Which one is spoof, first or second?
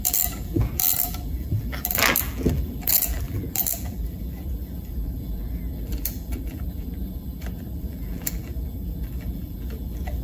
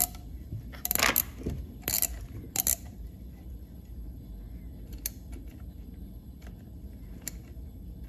first